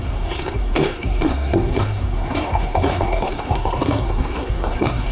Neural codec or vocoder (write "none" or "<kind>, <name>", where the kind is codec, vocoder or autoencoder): codec, SNAC